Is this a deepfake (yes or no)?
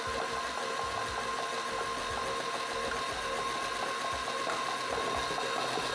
no